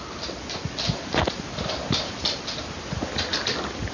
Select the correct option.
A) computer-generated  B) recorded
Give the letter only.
B